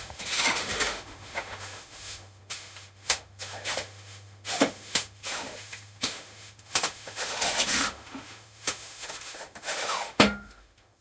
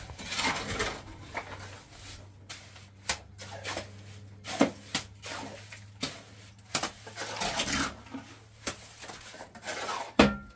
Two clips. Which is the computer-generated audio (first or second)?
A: first